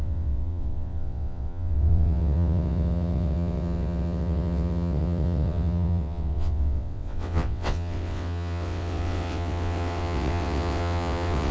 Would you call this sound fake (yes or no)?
yes